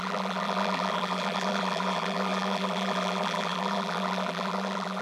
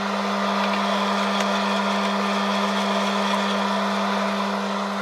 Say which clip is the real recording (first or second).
second